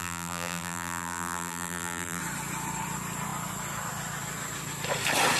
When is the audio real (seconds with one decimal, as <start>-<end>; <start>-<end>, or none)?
2.2-5.4